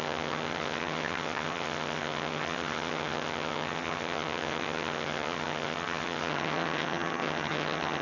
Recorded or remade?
remade